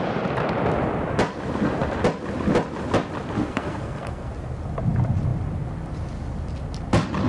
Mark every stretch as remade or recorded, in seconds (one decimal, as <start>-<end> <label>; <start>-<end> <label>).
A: 0.0-3.4 recorded; 3.4-4.3 remade; 4.3-7.3 recorded